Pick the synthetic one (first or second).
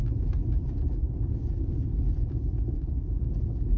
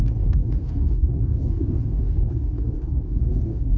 second